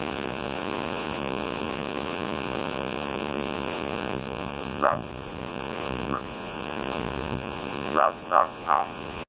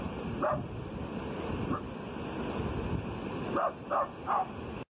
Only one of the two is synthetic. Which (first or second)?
first